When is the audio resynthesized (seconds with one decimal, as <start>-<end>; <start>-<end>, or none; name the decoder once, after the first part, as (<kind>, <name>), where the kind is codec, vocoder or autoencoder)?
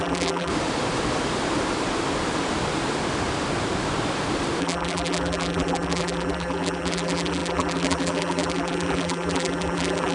0.0-0.5 (vocoder, BigVGAN v2); 4.6-10.1